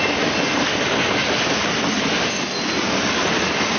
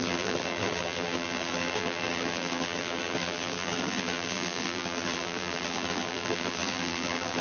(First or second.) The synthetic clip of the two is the second